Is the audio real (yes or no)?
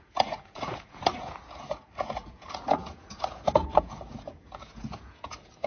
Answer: no